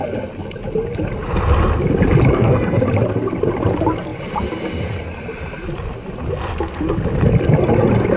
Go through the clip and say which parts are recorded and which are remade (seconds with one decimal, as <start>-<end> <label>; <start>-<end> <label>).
0.0-2.3 recorded; 2.3-2.8 remade; 2.8-8.2 recorded